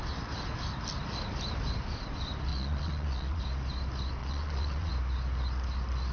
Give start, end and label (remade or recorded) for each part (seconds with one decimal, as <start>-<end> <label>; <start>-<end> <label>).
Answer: 0.0-2.5 recorded; 2.5-3.4 remade; 3.4-4.2 recorded; 4.2-4.9 remade; 4.9-6.1 recorded